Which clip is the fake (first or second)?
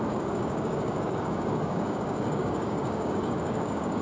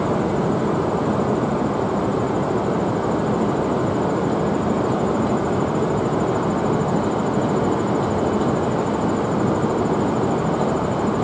first